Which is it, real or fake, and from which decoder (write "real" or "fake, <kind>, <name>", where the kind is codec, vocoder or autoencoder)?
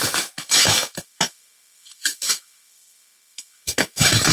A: fake, autoencoder, DAC-VAE